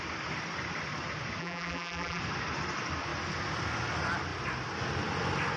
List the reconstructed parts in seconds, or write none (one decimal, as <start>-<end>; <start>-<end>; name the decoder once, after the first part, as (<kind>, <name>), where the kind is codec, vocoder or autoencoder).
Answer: 1.4-2.2 (vocoder, BigVGAN v2)

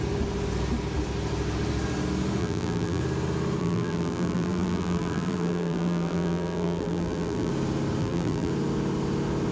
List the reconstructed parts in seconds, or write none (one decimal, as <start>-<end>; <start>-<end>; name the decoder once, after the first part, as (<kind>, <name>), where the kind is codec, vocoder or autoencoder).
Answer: 2.4-3.0 (vocoder, BigVGAN v2); 3.6-7.5; 8.0-8.5

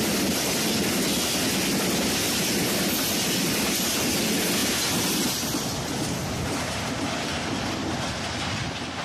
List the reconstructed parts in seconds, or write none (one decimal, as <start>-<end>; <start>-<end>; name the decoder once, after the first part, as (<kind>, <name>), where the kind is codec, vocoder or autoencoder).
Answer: none

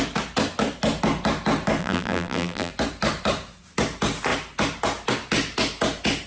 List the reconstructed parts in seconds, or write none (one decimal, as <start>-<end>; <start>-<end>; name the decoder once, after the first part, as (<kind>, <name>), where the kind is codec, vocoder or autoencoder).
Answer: 1.8-2.7 (vocoder, BigVGAN v2)

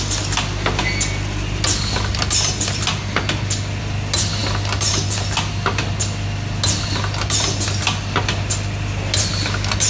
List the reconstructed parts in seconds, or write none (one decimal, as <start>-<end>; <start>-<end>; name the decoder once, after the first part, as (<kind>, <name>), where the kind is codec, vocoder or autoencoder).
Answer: none

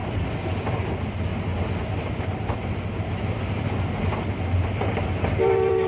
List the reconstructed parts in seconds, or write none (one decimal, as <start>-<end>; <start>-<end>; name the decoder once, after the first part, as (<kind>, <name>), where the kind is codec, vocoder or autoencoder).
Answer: 0.7-1.3 (vocoder, BigVGAN v2); 4.8-5.9